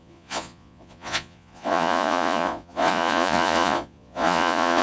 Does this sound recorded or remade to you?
remade